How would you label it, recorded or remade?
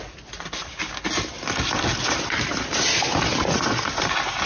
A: recorded